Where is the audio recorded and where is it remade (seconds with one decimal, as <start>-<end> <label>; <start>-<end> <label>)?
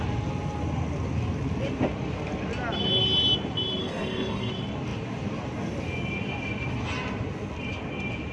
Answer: 0.0-3.8 recorded; 3.8-4.5 remade; 4.5-8.3 recorded